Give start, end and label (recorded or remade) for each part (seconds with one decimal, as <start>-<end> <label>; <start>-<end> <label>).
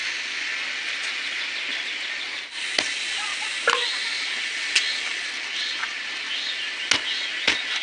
0.0-7.8 recorded